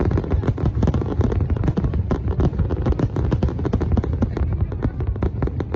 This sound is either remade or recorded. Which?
recorded